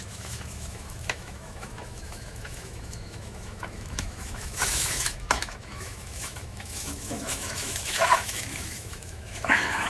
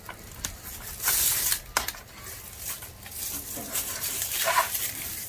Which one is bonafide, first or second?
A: second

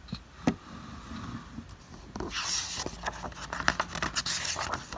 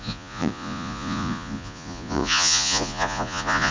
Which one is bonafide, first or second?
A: first